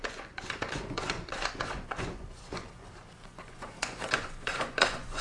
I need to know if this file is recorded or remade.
remade